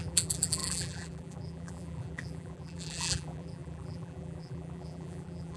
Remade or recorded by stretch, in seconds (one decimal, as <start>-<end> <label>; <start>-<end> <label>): 0.0-5.6 remade